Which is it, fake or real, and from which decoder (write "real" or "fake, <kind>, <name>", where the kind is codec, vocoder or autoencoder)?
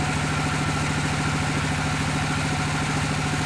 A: real